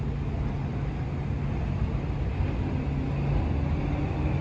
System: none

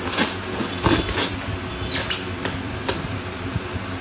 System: vocoder, BigVGAN v2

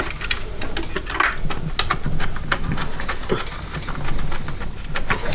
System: none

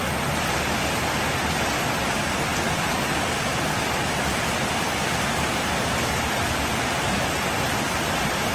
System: none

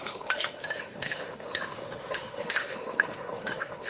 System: autoencoder, DAC-VAE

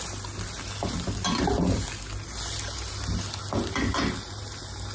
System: none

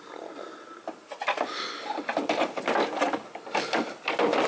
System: none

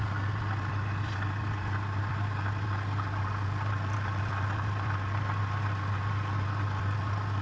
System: none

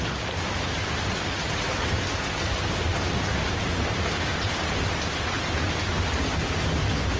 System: none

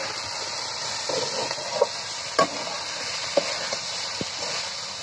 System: none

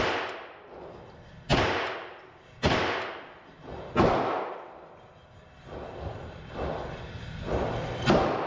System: none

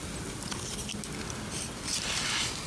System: none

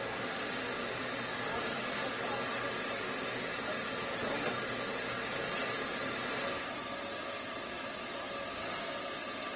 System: none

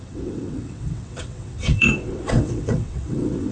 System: vocoder, WaveNeXt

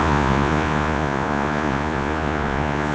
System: vocoder, Vocos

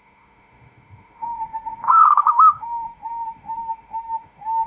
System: autoencoder, DAC-VAE